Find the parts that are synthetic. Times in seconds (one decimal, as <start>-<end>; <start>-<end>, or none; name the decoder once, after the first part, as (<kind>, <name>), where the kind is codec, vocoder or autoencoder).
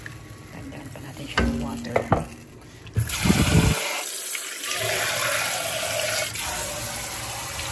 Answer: none